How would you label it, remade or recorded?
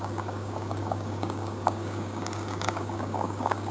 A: remade